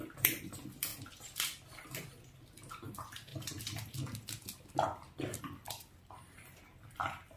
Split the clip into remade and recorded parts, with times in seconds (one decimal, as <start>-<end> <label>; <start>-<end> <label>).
0.0-7.4 recorded